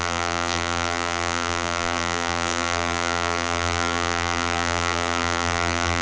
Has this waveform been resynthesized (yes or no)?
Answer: yes